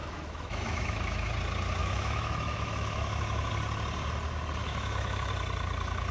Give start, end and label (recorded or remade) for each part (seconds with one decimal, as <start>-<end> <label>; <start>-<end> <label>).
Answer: 0.0-1.3 remade; 1.3-1.8 recorded; 1.8-3.5 remade; 3.5-4.6 recorded; 4.6-5.3 remade; 5.3-6.1 recorded

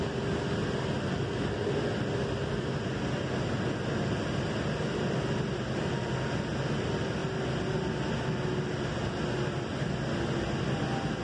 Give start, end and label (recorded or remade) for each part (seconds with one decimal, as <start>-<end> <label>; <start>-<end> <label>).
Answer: 0.0-11.2 recorded

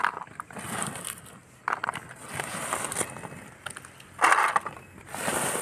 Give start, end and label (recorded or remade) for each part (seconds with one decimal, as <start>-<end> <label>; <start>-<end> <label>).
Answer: 0.0-5.6 recorded